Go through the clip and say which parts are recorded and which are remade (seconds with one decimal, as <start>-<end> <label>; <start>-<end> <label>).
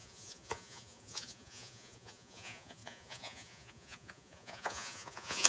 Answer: 0.0-5.5 remade